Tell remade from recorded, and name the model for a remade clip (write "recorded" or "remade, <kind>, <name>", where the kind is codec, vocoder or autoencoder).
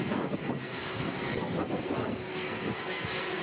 remade, codec, SNAC